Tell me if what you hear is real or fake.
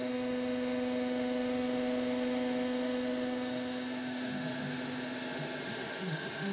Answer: fake